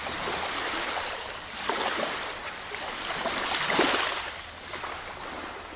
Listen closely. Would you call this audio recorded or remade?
recorded